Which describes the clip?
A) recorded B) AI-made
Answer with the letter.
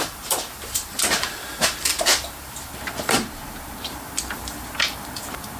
B